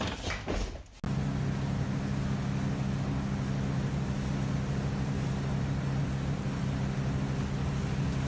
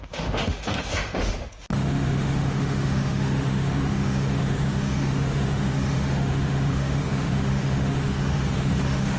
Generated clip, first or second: second